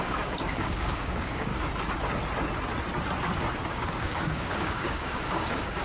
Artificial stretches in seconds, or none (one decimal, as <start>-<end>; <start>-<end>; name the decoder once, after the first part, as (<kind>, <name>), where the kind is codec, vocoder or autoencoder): 0.0-1.5 (codec, DAC); 3.7-5.8